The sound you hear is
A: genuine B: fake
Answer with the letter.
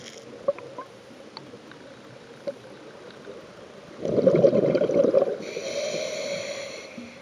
A